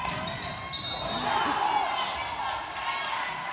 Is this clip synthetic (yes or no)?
no